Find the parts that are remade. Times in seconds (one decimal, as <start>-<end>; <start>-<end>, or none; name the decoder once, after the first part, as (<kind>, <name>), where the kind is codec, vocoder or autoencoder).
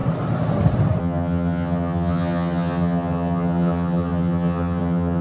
1.0-5.2 (vocoder, HiFi-GAN)